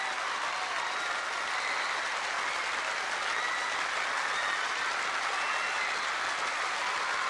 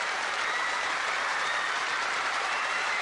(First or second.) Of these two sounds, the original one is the first